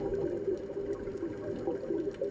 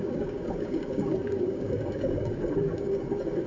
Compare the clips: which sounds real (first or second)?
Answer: first